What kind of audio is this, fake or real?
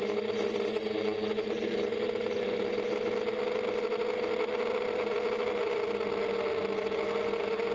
real